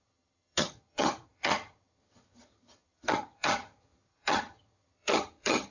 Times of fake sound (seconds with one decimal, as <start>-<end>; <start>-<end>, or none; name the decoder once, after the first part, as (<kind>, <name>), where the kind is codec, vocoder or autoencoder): 0.0-5.7 (vocoder, HiFi-GAN)